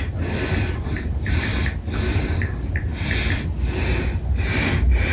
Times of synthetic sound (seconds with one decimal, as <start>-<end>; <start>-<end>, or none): 0.9-1.5; 2.1-2.9; 3.9-5.1